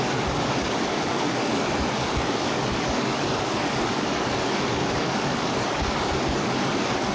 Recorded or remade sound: remade